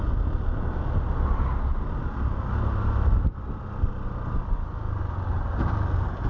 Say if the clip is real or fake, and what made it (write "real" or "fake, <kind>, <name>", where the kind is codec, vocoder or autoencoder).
real